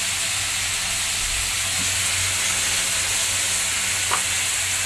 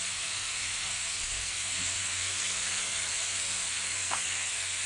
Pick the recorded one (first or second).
first